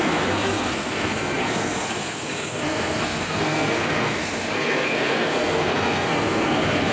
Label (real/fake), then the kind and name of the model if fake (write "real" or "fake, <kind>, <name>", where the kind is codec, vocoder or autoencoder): fake, codec, SNAC